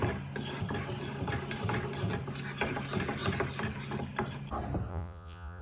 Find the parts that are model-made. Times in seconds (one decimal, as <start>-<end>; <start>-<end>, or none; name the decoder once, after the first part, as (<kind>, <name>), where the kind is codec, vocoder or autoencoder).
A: 4.9-5.6 (vocoder, Vocos)